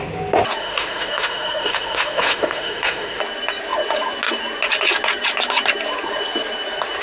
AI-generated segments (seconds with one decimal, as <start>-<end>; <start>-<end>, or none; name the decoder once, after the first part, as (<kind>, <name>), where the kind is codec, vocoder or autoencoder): 0.6-3.2 (autoencoder, DAC-VAE)